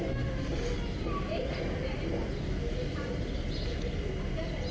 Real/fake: real